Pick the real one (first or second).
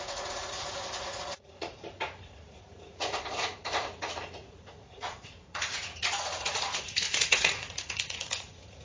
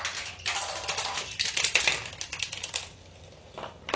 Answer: second